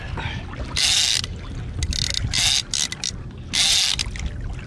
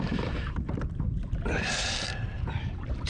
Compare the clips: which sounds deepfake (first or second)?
second